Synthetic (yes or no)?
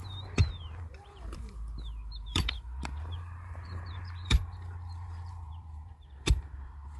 yes